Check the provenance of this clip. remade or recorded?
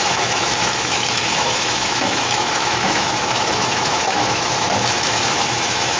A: remade